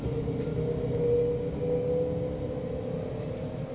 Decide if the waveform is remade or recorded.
recorded